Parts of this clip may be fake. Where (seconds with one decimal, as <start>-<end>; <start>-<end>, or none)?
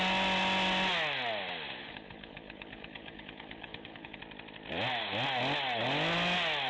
1.8-4.2